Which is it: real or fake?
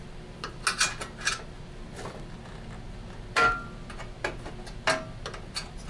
real